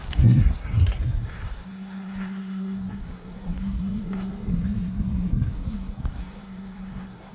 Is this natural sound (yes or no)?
no